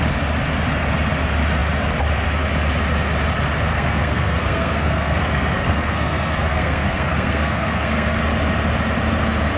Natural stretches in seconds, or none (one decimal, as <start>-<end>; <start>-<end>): 0.0-3.7; 8.2-9.6